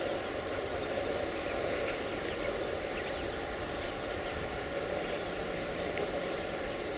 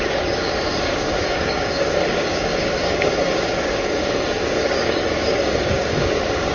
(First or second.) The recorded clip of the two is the first